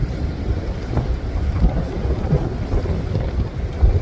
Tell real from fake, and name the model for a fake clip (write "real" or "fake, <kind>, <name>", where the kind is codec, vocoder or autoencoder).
real